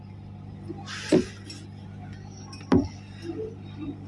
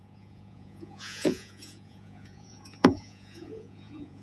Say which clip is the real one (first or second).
first